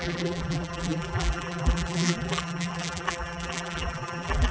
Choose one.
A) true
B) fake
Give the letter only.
B